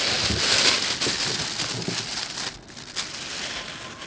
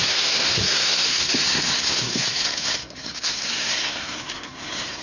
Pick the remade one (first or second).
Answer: second